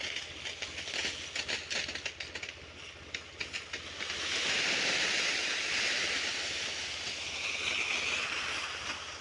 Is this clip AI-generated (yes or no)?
no